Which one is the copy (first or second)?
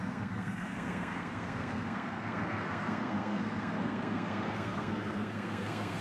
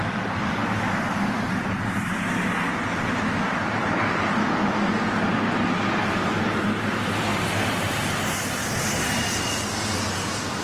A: first